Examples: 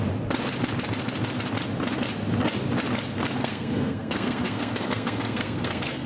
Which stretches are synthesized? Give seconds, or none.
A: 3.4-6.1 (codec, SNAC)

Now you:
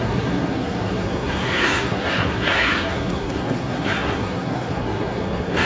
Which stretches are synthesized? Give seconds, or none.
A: 0.0-5.7 (codec, SNAC)

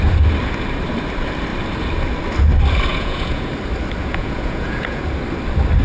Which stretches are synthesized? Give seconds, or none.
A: 2.9-3.5 (vocoder, Vocos); 4.0-5.0

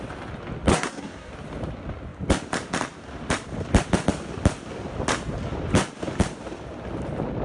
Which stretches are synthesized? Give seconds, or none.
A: 0.7-1.3 (codec, SNAC)

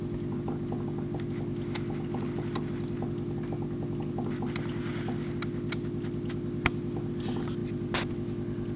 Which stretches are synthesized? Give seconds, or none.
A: none

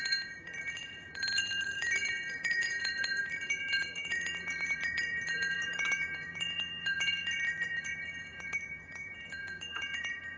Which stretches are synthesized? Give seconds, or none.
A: 0.0-10.4 (vocoder, Vocos)